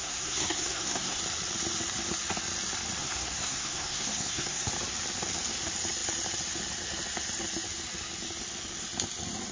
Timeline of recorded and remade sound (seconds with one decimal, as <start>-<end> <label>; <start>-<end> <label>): 0.0-1.2 remade; 1.2-3.0 recorded; 3.0-4.7 remade; 4.7-9.5 recorded